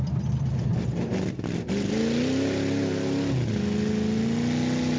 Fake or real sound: real